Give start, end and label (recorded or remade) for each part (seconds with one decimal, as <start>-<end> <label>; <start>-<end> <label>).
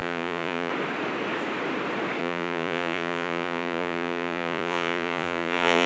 0.0-0.7 remade; 0.7-2.2 recorded; 2.2-5.9 remade